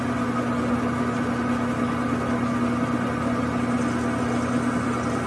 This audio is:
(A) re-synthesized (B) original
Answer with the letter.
B